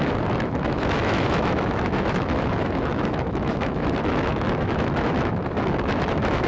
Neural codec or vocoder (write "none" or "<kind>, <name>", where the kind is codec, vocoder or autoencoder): autoencoder, DAC-VAE